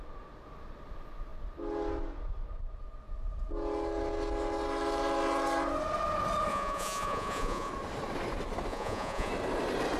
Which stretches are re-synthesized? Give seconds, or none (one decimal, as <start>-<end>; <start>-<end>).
6.5-7.7; 8.7-9.3